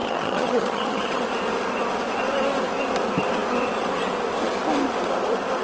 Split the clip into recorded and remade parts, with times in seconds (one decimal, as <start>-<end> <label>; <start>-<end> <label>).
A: 0.0-1.2 remade; 1.2-5.6 recorded